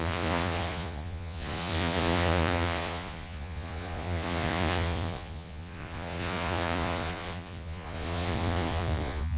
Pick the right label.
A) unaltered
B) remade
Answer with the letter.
B